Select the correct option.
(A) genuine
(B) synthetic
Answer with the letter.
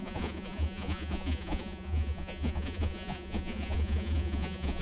B